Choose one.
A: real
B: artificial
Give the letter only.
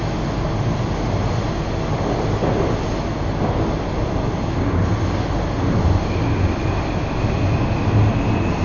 A